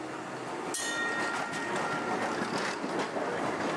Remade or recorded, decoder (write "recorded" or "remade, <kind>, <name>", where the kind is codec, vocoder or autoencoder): recorded